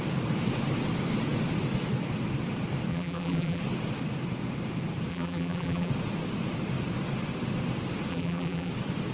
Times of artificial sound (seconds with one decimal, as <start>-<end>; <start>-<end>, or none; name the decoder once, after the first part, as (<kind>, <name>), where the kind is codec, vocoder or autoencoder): 2.9-3.6 (vocoder, BigVGAN v2); 5.1-5.9; 8.1-8.7